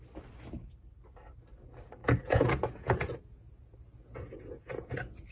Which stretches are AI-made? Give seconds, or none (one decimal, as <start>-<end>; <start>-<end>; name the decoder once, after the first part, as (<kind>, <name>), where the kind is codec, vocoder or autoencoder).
2.0-5.3 (vocoder, Vocos)